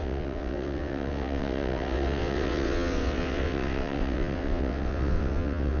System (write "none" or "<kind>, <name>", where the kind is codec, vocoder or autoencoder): vocoder, WaveNeXt